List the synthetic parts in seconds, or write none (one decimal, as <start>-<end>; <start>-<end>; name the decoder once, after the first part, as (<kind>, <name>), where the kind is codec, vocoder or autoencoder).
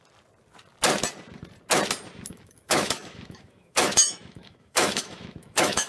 2.3-5.9 (autoencoder, DAC-VAE)